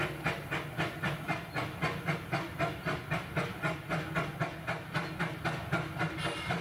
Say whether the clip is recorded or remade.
recorded